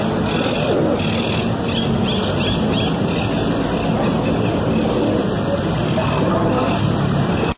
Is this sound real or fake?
real